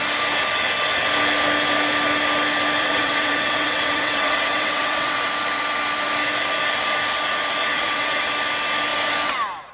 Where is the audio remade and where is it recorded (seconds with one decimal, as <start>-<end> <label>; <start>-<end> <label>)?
0.0-2.8 recorded; 2.8-5.3 remade; 5.3-7.6 recorded; 7.6-8.3 remade; 8.3-9.7 recorded